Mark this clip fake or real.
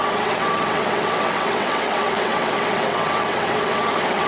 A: fake